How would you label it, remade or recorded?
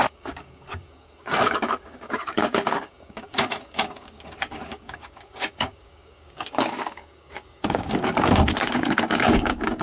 remade